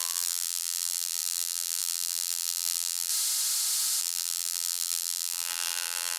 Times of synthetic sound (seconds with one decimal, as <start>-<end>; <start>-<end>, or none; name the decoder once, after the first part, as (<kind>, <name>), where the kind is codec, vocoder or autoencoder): 0.0-3.1 (vocoder, BigVGAN v2); 4.0-6.2